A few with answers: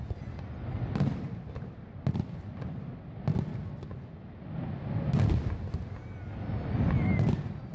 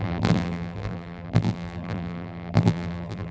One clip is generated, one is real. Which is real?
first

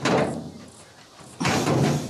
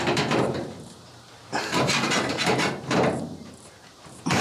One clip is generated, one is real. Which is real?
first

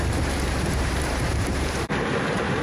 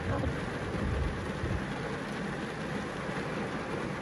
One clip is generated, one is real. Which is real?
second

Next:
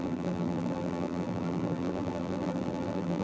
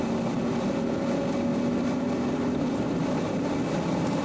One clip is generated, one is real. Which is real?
second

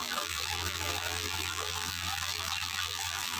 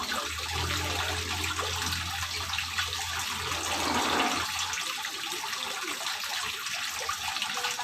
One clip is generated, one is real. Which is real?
second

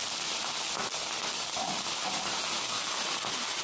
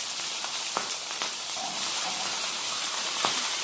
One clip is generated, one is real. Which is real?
first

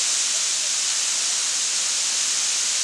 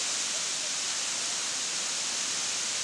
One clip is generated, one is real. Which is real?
first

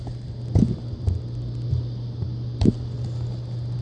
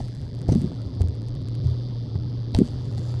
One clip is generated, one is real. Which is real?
first